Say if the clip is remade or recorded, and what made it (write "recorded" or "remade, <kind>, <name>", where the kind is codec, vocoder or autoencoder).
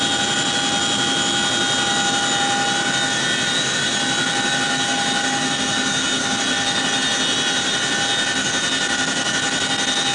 recorded